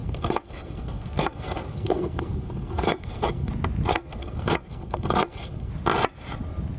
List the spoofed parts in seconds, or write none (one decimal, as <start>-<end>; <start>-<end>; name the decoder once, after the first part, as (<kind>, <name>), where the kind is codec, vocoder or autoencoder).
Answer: 0.0-3.5 (codec, SNAC); 3.9-5.7